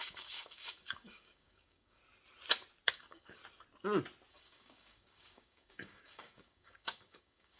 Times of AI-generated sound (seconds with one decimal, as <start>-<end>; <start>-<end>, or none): 0.0-2.0; 2.9-3.4; 4.3-7.6